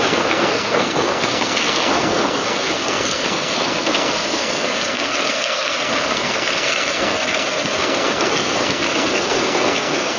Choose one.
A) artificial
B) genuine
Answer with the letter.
A